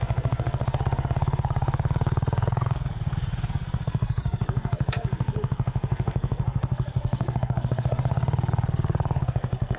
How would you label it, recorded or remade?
remade